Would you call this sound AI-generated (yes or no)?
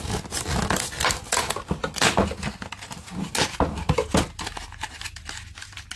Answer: no